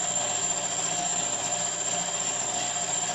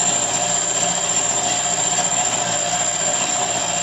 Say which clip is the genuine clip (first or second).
second